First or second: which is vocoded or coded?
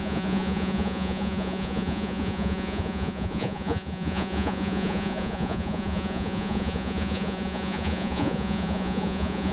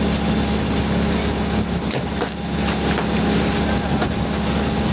first